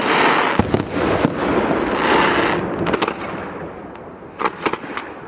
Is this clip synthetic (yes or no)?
no